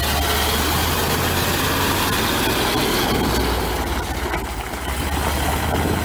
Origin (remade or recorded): recorded